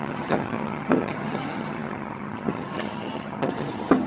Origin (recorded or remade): remade